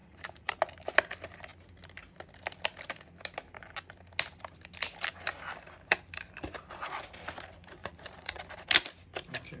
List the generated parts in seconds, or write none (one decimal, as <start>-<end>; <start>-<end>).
0.0-0.5; 7.8-8.4